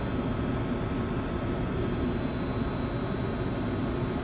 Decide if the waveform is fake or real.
real